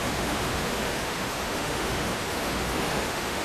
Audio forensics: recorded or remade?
remade